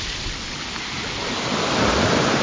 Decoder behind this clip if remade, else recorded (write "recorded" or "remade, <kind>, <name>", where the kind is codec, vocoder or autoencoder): recorded